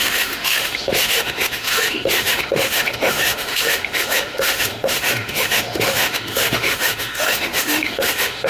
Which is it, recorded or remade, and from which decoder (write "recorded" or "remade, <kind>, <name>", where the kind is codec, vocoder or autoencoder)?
remade, autoencoder, DAC-VAE